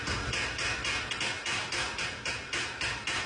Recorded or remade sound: recorded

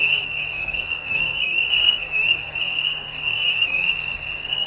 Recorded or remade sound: remade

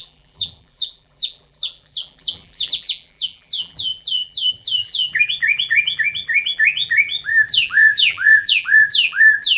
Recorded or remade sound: remade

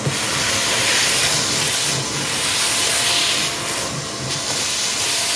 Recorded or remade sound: recorded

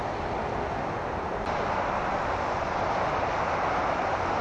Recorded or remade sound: recorded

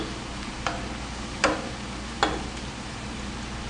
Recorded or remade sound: recorded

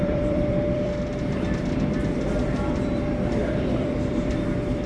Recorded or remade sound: remade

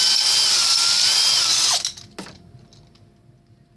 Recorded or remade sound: recorded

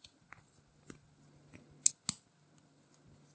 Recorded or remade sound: recorded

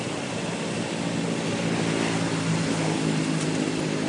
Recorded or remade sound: recorded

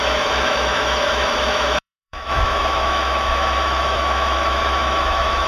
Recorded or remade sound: remade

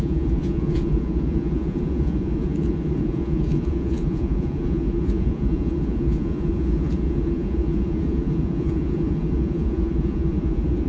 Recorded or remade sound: remade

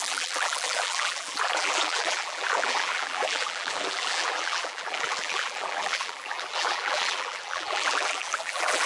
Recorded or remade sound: remade